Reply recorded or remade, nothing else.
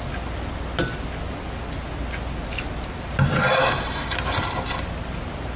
recorded